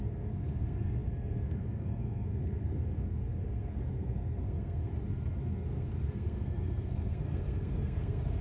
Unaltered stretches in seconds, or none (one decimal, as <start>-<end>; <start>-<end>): 4.9-5.4